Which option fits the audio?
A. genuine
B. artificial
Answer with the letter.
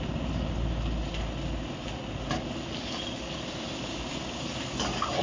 A